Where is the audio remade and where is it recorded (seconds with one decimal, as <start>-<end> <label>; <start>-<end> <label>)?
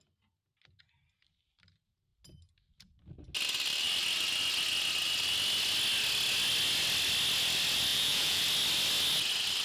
0.0-7.9 recorded; 7.9-8.4 remade; 8.4-9.6 recorded